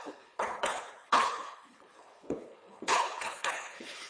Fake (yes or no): yes